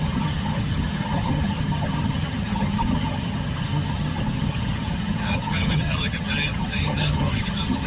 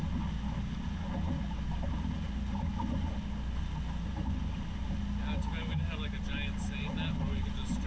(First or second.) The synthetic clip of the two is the first